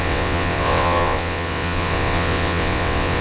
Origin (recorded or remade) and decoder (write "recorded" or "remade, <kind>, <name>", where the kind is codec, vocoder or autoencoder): remade, vocoder, WaveNeXt